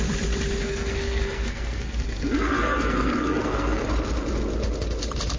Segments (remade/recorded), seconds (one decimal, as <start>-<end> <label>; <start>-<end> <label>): 0.0-0.6 recorded; 0.6-3.8 remade; 3.8-5.4 recorded